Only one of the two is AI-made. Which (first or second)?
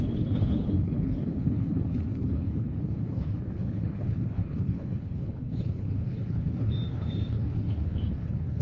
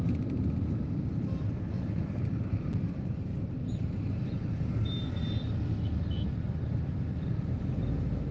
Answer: first